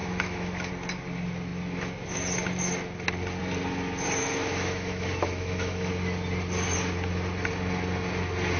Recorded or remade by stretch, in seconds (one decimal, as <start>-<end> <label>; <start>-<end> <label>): 0.0-0.7 remade; 0.7-4.2 recorded; 4.2-5.9 remade; 5.9-8.6 recorded